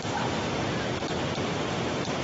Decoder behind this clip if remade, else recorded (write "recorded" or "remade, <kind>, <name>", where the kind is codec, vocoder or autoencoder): remade, vocoder, BigVGAN v2